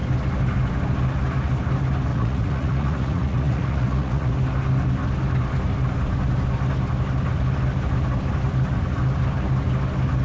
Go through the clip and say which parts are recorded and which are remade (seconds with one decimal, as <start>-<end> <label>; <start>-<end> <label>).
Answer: 0.0-2.1 recorded; 2.1-4.3 remade; 4.3-10.2 recorded